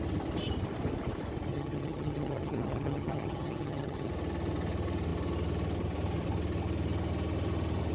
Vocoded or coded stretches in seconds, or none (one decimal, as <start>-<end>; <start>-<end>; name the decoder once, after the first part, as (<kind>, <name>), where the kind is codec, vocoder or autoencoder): 1.5-4.1 (vocoder, HiFi-GAN)